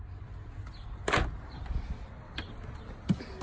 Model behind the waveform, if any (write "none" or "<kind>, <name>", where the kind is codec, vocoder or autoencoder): none